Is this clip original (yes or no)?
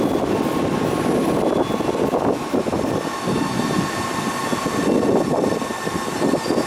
yes